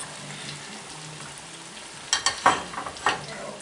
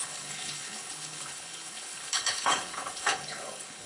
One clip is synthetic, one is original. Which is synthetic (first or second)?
second